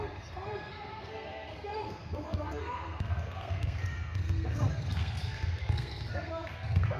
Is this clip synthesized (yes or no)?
yes